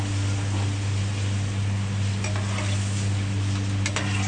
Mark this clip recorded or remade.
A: recorded